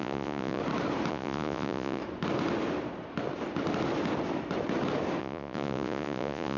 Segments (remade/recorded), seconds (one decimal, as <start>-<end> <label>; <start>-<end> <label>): 0.0-0.6 remade; 0.6-1.1 recorded; 1.1-2.0 remade; 2.0-5.2 recorded; 5.2-6.6 remade